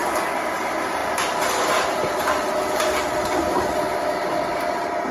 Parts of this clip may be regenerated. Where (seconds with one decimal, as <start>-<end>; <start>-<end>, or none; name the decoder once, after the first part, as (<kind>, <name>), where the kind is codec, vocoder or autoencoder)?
0.5-5.1 (vocoder, BigVGAN v2)

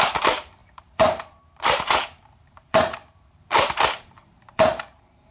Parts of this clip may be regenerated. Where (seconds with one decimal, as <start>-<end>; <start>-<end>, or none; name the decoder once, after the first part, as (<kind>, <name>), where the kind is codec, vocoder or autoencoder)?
0.0-5.3 (vocoder, BigVGAN v2)

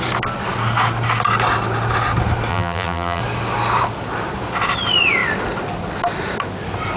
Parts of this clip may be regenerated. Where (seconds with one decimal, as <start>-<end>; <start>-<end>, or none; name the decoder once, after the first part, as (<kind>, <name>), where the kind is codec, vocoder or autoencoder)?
2.5-3.2 (vocoder, BigVGAN v2)